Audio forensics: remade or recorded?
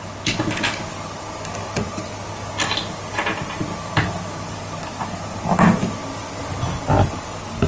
recorded